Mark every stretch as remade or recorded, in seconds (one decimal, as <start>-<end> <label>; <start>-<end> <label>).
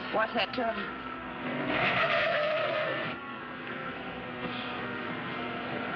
0.0-0.5 recorded; 0.5-6.0 remade